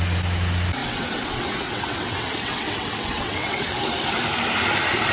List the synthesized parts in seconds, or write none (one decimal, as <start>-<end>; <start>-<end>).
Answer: 0.8-3.8